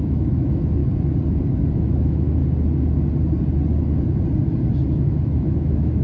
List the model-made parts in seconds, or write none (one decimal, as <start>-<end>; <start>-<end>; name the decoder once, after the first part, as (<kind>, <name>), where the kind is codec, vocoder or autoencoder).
0.0-0.8 (autoencoder, DAC-VAE); 1.7-2.4; 4.9-6.0